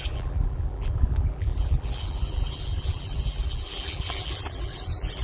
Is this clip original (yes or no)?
no